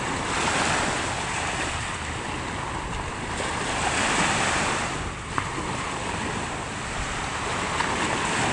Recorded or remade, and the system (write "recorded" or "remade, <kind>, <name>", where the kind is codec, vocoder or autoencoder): recorded